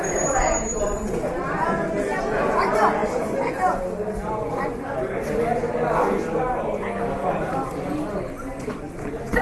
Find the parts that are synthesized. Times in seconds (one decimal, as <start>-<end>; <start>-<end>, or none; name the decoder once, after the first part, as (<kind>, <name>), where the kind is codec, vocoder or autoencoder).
none